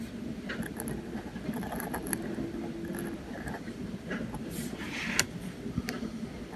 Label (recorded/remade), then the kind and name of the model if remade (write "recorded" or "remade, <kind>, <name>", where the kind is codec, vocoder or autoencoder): recorded